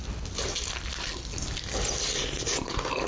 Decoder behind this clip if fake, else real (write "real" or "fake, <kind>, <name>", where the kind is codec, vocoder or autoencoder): real